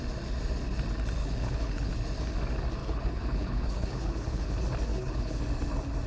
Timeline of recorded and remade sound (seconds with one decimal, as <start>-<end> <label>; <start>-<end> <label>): 0.0-1.2 recorded; 1.2-1.9 remade; 1.9-2.8 recorded; 2.8-4.5 remade; 4.5-4.9 recorded; 4.9-5.4 remade; 5.4-6.1 recorded